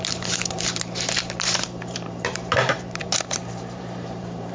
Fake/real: fake